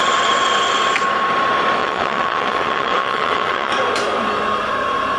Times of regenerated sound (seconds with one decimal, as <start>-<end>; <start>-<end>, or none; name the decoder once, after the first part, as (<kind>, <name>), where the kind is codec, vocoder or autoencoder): 0.0-0.5 (vocoder, WaveNeXt); 1.8-3.7